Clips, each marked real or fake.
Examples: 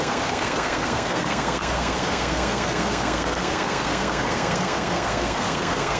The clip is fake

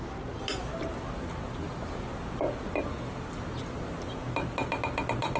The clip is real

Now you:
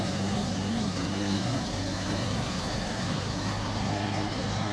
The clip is fake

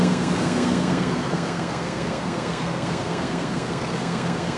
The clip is fake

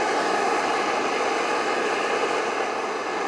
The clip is real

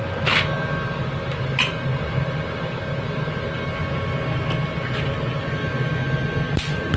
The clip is real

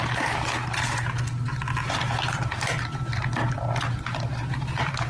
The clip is real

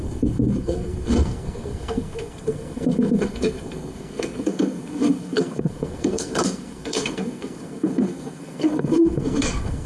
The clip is fake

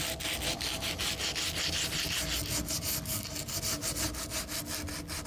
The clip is real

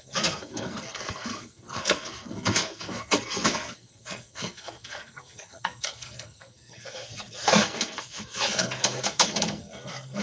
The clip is fake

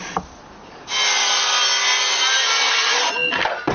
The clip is real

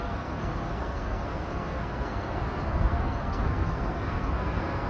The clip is fake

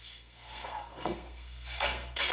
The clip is fake